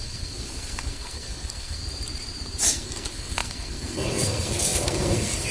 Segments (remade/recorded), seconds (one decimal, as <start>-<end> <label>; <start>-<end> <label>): 0.0-1.8 remade; 1.8-2.7 recorded; 2.7-5.5 remade

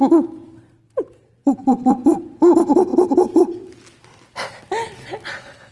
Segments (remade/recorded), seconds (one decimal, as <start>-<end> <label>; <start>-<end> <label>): 0.0-5.7 recorded